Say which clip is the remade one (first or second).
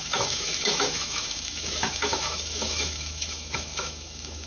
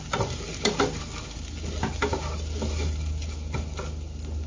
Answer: first